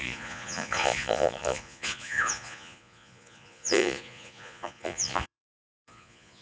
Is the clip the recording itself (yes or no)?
no